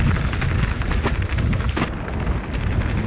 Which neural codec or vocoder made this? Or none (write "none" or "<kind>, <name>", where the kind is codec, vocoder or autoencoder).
none